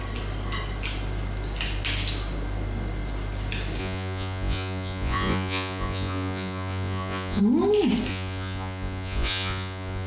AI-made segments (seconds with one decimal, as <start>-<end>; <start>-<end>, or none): 3.8-7.4; 8.1-10.1